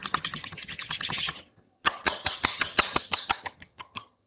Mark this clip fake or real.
fake